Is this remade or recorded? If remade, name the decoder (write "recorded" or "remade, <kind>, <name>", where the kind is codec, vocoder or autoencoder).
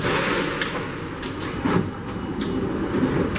recorded